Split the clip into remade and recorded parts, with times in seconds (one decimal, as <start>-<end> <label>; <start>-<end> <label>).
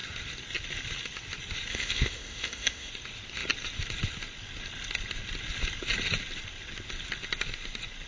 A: 0.0-1.7 recorded; 1.7-2.9 remade; 2.9-8.1 recorded